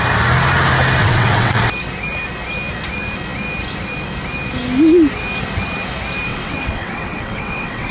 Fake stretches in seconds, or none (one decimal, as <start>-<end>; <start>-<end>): 1.0-1.6; 6.3-7.9